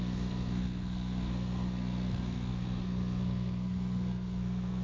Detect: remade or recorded remade